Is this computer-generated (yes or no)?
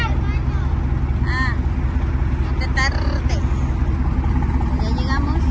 no